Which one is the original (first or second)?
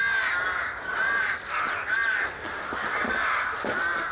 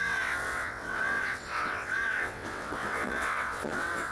first